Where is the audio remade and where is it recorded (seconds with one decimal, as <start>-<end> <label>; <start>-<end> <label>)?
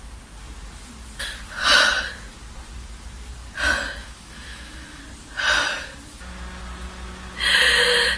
0.0-4.0 recorded; 4.0-5.0 remade; 5.0-8.2 recorded